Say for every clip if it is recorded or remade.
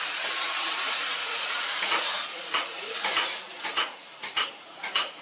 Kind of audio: remade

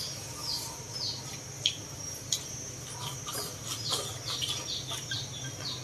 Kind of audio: recorded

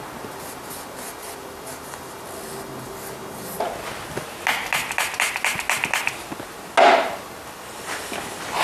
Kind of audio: recorded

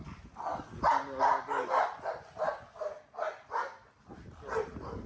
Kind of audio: recorded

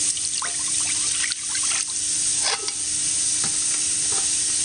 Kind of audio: recorded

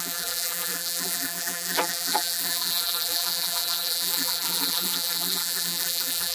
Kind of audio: remade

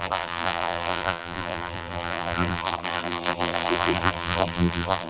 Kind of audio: remade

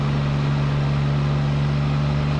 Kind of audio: recorded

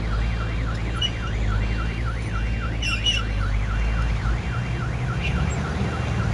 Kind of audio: recorded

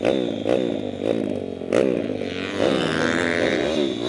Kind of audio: recorded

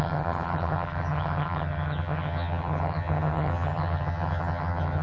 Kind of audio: remade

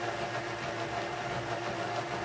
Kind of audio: recorded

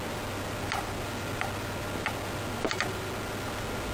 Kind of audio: recorded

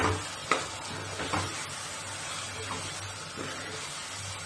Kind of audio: recorded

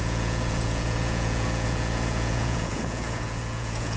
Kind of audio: remade